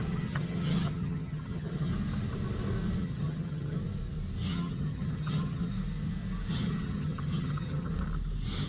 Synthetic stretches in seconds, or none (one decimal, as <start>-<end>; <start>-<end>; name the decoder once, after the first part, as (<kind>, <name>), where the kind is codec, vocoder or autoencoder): 0.0-1.9 (vocoder, HiFi-GAN); 3.0-3.8; 4.5-5.7; 6.5-7.9